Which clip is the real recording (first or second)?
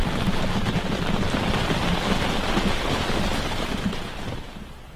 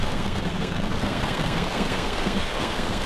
first